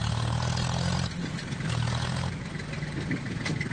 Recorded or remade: recorded